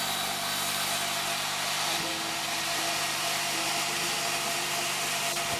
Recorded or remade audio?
recorded